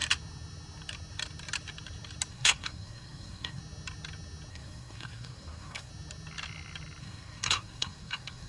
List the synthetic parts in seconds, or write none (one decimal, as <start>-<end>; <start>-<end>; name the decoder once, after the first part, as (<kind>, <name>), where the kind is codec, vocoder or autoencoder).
2.3-3.6 (codec, SNAC); 4.5-5.9; 7.0-8.5